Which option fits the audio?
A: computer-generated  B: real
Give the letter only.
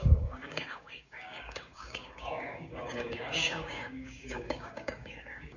A